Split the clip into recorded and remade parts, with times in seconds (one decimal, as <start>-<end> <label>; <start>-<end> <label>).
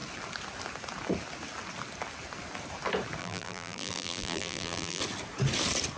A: 0.0-3.2 recorded; 3.2-5.0 remade; 5.0-6.0 recorded